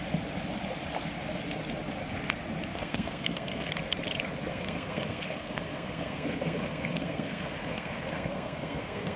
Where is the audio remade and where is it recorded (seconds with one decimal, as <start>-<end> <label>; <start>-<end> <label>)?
0.0-2.7 recorded; 2.7-3.7 remade; 3.7-4.5 recorded; 4.5-9.2 remade